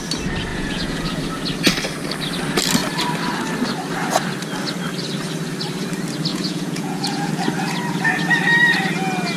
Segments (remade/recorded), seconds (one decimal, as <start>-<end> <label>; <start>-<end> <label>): 0.0-0.5 recorded; 0.5-1.2 remade; 1.2-6.3 recorded; 6.3-7.3 remade; 7.3-9.4 recorded